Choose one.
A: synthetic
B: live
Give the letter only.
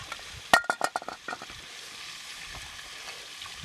B